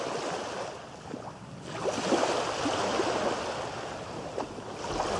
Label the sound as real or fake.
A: real